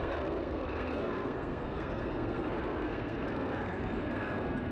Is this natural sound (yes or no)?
no